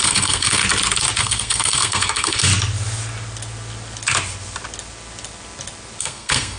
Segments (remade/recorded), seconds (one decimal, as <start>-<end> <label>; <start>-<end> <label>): 0.0-0.6 remade; 0.6-1.2 recorded; 1.2-2.5 remade; 2.5-6.0 recorded; 6.0-6.6 remade